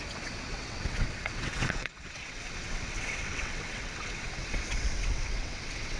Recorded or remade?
remade